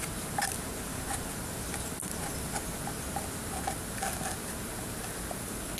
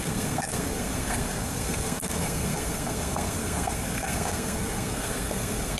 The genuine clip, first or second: first